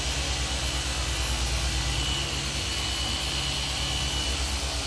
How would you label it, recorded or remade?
recorded